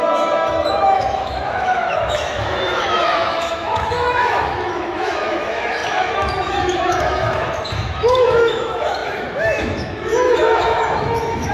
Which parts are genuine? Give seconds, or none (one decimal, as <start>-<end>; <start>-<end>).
none